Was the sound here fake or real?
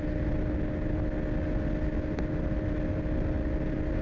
real